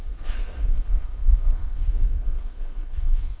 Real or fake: fake